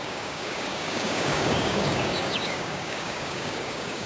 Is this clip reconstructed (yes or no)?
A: yes